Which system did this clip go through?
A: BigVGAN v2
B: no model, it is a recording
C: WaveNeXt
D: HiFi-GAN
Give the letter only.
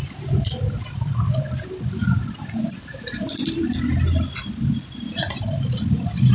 A